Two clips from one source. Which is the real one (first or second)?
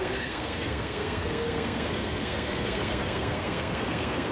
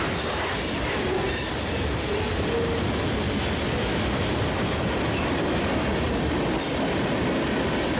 second